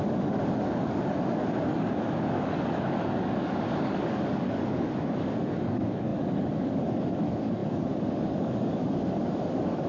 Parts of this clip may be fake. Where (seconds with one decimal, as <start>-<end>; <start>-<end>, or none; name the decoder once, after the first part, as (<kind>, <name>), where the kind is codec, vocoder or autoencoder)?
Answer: 0.0-9.9 (codec, DAC)